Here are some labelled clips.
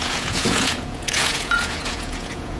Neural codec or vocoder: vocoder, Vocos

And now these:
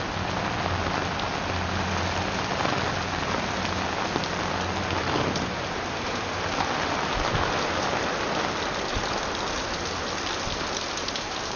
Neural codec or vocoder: none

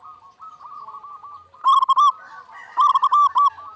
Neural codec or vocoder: none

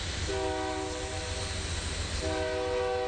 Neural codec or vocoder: none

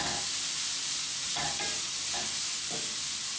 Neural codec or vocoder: none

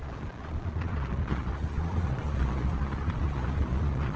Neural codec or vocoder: vocoder, Vocos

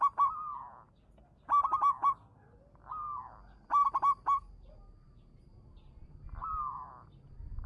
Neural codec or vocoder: none